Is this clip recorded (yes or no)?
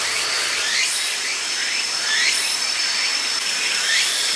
yes